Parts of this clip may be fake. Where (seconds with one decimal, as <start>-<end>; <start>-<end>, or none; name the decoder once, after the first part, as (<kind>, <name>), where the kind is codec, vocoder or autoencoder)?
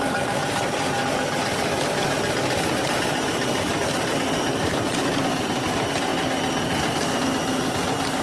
0.0-6.1 (vocoder, BigVGAN v2)